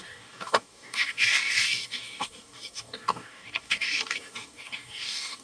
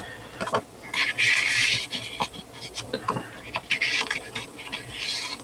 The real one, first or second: second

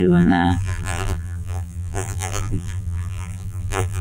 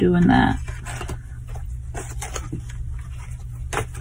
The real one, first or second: second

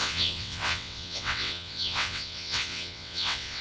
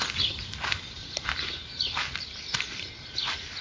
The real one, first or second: second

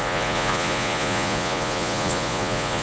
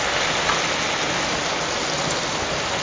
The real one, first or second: second